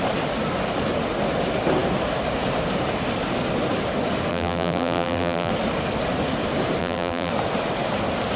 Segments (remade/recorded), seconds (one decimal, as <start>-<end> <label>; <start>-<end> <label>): 0.0-4.3 recorded; 4.3-5.5 remade; 5.5-6.8 recorded; 6.8-7.3 remade; 7.3-8.4 recorded